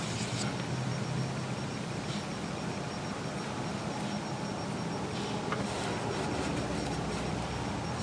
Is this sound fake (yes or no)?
no